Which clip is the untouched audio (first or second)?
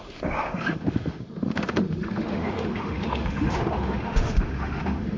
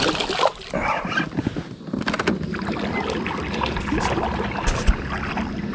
second